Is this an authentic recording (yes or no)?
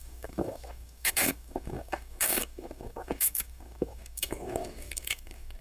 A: no